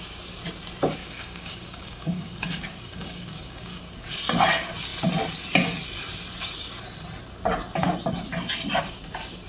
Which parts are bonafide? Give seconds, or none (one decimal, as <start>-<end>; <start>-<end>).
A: 0.0-1.0; 3.8-9.5